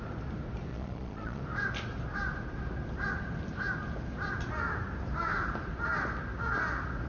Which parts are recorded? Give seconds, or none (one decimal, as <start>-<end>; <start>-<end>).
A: 0.0-0.7; 1.4-7.1